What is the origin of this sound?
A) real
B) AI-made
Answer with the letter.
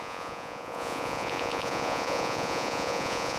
B